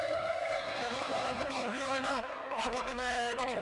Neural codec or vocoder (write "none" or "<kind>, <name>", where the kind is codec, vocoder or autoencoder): codec, SNAC